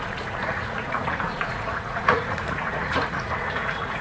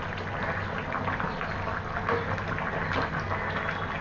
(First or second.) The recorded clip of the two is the second